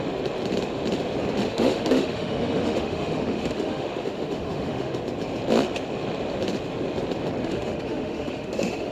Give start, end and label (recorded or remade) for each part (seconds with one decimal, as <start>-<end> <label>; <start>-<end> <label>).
0.0-1.5 recorded; 1.5-5.0 remade; 5.0-7.4 recorded; 7.4-8.9 remade